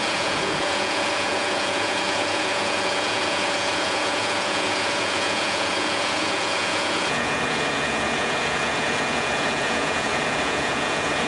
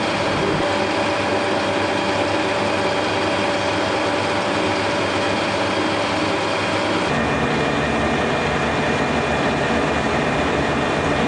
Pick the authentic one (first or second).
second